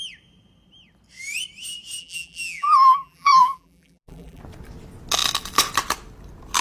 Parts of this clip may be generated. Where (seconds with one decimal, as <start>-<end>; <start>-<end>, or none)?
2.0-4.4